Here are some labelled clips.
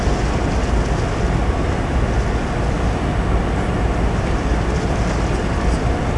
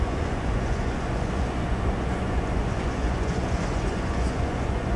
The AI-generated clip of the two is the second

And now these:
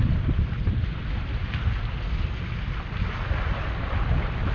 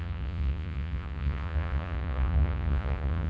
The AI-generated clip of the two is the second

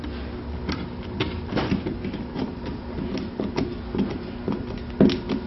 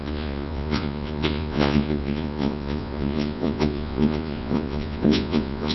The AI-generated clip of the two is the second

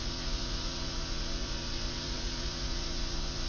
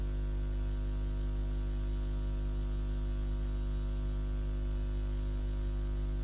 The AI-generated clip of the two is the first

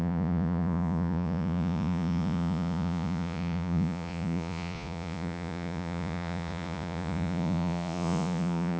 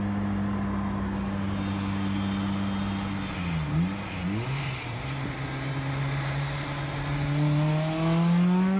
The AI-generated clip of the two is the first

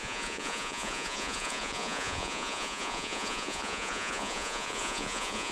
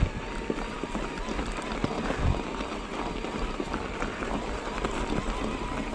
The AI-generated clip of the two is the first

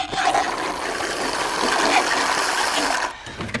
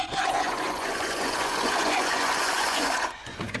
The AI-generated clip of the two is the second